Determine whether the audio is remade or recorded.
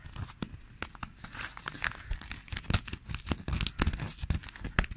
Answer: recorded